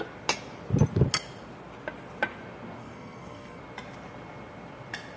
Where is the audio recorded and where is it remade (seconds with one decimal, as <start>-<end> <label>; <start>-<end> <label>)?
0.0-2.8 recorded; 2.8-3.6 remade; 3.6-5.2 recorded